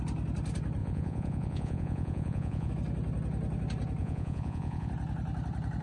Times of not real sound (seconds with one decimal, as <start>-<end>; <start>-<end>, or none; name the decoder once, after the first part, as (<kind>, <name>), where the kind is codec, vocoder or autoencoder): 0.8-2.7 (vocoder, Vocos); 4.0-4.9